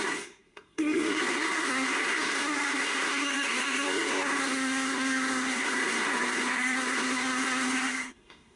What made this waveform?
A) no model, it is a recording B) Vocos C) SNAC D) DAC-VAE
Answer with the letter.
C